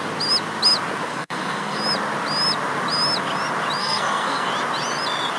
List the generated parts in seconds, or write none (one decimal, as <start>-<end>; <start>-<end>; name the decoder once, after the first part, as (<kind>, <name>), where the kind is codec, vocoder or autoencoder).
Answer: 1.1-1.8 (codec, SNAC); 3.8-4.5